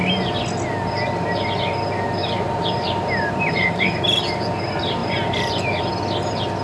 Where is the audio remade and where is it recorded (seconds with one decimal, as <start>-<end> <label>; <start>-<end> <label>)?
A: 0.0-2.2 recorded; 2.2-4.2 remade; 4.2-5.0 recorded; 5.0-5.8 remade; 5.8-6.6 recorded